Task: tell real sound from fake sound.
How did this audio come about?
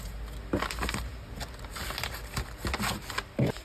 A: real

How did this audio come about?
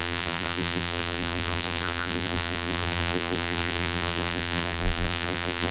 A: fake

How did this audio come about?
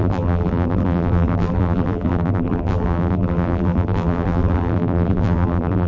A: fake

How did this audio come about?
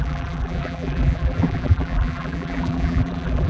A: fake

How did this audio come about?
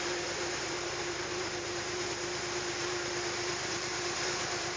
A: fake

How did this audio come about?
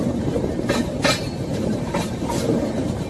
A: fake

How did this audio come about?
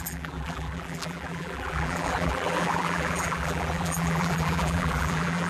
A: fake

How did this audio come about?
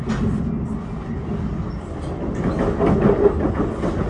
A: real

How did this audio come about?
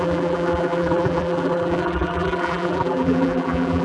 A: fake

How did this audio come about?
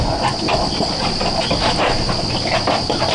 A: real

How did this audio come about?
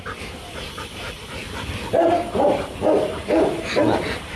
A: fake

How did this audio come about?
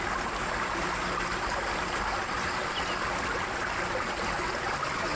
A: real